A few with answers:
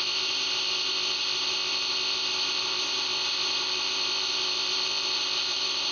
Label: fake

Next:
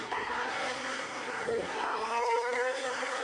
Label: fake